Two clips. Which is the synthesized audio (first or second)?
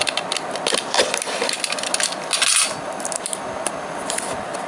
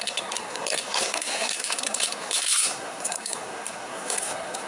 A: second